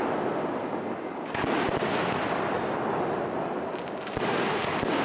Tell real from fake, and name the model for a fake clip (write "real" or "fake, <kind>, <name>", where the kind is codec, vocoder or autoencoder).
real